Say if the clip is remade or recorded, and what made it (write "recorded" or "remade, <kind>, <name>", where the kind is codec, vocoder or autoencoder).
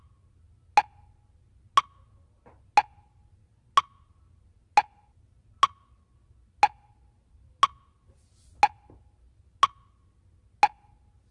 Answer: recorded